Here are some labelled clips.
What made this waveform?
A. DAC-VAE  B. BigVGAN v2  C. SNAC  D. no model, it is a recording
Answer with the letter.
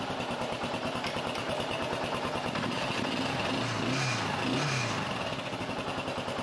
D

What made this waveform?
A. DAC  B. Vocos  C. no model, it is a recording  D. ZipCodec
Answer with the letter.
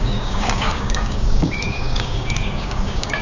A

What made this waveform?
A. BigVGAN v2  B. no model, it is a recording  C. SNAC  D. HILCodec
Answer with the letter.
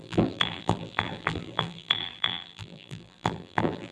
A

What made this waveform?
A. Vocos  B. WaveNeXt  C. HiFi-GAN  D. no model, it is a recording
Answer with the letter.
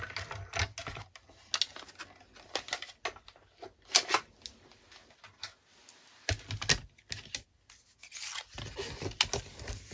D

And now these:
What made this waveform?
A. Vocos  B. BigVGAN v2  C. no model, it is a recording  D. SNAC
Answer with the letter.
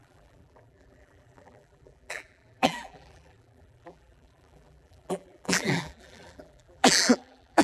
B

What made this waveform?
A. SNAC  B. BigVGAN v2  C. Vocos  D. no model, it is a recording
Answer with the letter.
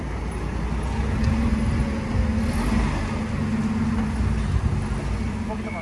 D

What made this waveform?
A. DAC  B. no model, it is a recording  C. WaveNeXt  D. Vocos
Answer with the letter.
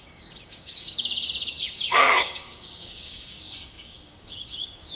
A